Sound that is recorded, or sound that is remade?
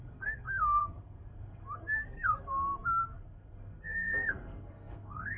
remade